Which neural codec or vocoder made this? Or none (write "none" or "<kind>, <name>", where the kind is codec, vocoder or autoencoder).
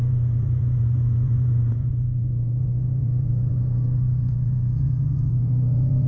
vocoder, Vocos